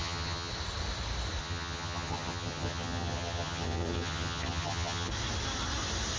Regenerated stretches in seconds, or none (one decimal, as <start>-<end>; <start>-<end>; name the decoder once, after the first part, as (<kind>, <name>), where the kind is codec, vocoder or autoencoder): 0.0-0.5 (vocoder, HiFi-GAN); 1.4-5.1